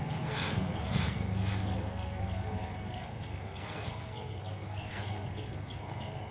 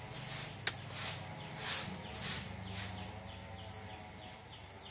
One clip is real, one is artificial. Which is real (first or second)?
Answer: second